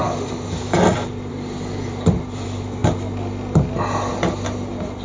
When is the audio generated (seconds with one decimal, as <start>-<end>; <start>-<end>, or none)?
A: 1.3-2.8; 4.1-5.0